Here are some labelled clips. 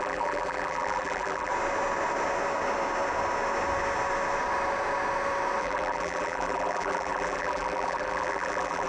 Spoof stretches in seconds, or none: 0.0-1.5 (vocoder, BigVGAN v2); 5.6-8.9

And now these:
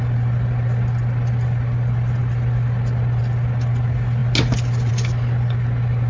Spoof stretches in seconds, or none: none

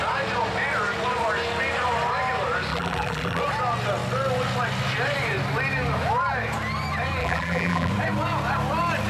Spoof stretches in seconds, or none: 2.7-3.4 (vocoder, BigVGAN v2); 7.2-7.9

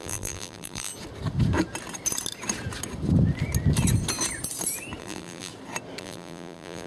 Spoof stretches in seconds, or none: 0.0-0.9 (vocoder, BigVGAN v2); 5.0-5.5; 6.0-6.9

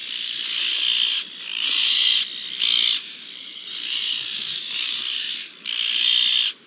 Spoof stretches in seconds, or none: 1.5-2.2 (vocoder, BigVGAN v2); 3.4-5.5

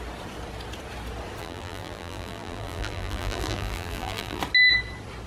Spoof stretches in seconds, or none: 1.4-4.4 (vocoder, BigVGAN v2)

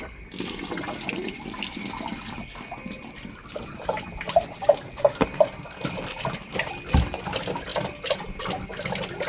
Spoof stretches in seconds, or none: none